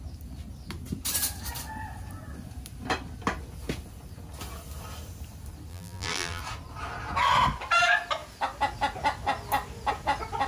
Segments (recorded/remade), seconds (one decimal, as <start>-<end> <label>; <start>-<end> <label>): 0.0-5.7 recorded; 5.7-6.4 remade; 6.4-10.5 recorded